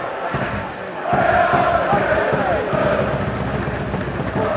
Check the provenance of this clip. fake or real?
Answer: real